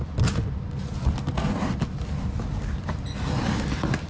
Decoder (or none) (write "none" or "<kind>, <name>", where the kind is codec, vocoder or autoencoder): none